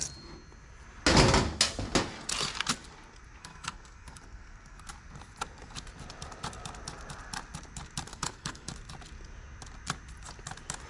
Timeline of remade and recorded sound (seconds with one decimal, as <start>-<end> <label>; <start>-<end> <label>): 0.0-3.4 recorded; 3.4-4.9 remade; 4.9-8.1 recorded; 8.1-8.7 remade; 8.7-10.9 recorded